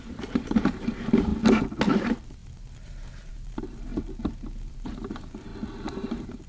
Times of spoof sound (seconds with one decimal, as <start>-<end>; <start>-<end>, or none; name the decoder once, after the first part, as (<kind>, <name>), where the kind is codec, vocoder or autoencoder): 0.0-1.3 (vocoder, BigVGAN v2); 2.0-3.9; 4.7-5.5; 6.0-6.5